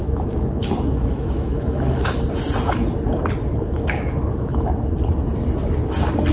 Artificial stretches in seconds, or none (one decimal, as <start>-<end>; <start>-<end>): 0.0-2.2; 3.5-4.9